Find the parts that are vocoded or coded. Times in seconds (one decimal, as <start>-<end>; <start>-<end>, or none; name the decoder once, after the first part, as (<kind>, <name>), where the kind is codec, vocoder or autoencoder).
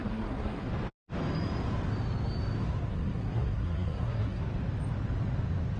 0.0-0.7 (codec, SNAC); 2.9-4.4